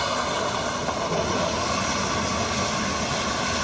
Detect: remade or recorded recorded